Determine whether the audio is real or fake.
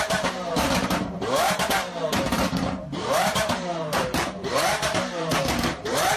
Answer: fake